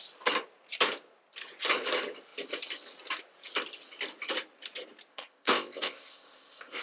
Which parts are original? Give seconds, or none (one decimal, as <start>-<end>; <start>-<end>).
0.0-5.1